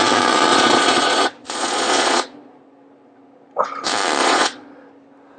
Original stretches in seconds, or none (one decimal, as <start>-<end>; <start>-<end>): 0.0-0.5; 2.6-4.2; 4.8-5.4